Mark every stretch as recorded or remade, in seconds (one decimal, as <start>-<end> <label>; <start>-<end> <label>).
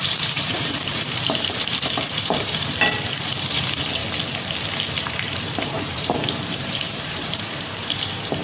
0.0-4.0 remade; 4.0-5.0 recorded; 5.0-8.4 remade